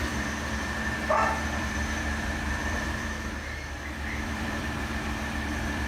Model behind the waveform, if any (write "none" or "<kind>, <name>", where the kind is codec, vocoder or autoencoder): vocoder, BigVGAN v2